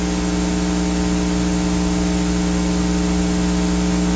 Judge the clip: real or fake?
real